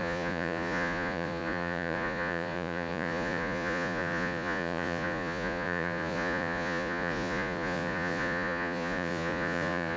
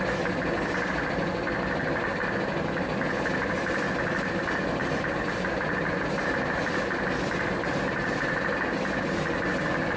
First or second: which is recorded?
second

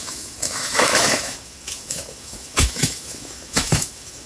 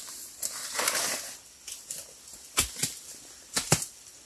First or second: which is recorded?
second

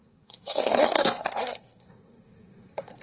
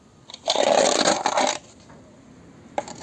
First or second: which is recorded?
second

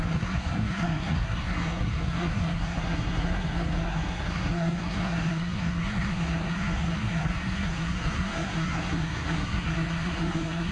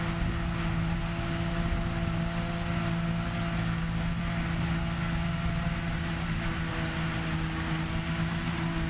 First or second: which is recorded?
second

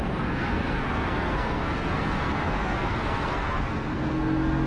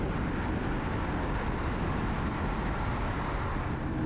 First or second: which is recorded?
second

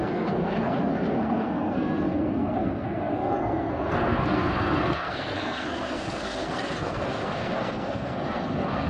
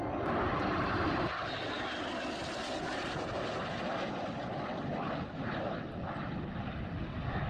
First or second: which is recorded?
second